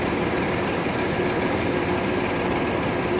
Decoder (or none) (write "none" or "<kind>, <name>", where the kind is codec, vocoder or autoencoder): none